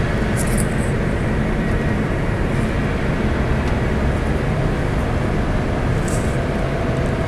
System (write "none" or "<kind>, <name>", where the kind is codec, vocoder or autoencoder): none